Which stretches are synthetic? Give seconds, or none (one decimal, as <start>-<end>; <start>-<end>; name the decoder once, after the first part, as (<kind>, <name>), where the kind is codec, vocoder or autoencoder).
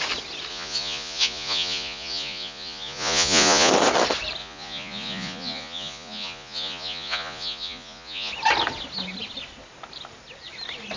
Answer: 0.5-3.7 (vocoder, Vocos); 4.4-8.3